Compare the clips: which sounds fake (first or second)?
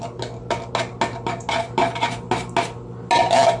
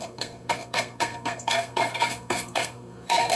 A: second